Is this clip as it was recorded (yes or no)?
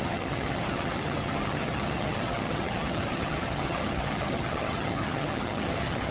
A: no